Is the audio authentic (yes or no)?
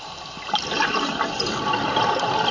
yes